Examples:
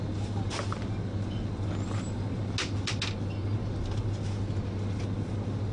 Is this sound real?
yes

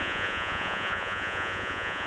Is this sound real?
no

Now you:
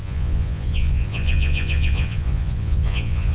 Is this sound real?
no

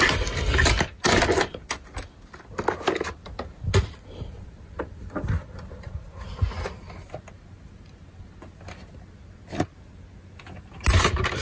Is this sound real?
yes